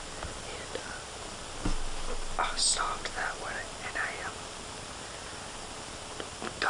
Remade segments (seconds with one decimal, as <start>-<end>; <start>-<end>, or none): none